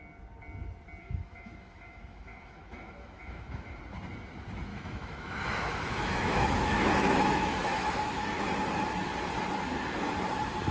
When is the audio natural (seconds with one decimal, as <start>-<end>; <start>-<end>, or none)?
0.0-1.0; 3.8-4.7; 8.0-10.7